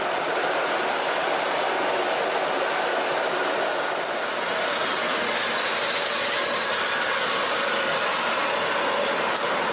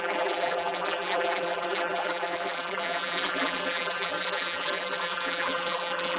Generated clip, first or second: second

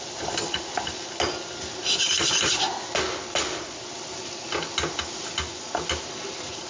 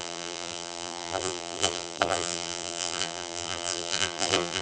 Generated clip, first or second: second